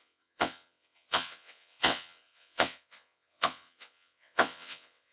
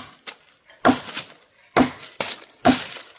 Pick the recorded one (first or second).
second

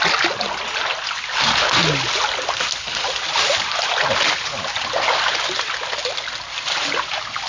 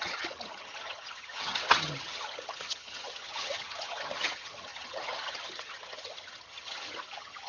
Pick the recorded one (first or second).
first